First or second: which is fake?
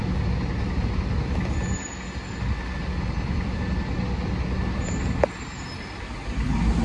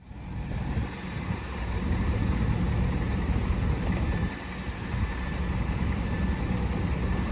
second